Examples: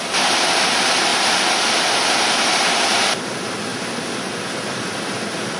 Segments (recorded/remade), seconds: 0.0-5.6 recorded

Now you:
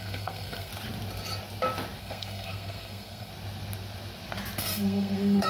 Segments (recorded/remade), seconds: 0.0-0.7 remade; 0.7-2.0 recorded; 2.0-3.3 remade; 3.3-4.6 recorded; 4.6-5.5 remade